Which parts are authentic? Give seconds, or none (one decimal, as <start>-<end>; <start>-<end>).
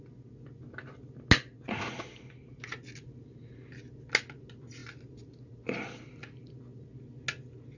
0.0-4.8; 6.8-7.8